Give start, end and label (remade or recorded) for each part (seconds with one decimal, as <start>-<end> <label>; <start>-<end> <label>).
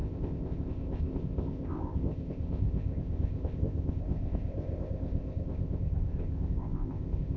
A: 0.0-7.4 remade